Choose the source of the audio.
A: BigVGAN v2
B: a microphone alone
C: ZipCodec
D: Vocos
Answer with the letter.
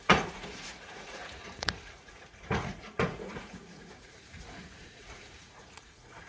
D